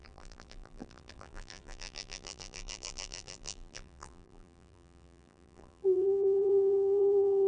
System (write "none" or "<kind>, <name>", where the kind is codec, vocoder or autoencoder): vocoder, BigVGAN v2